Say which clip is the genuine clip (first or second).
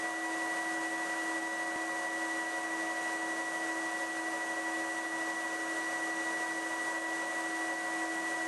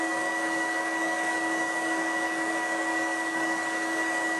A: first